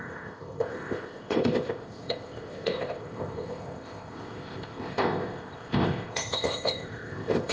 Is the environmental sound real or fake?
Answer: fake